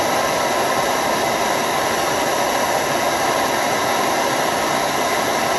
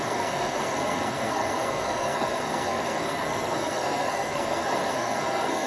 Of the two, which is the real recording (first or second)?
first